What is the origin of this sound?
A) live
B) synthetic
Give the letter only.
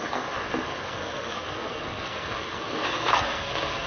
B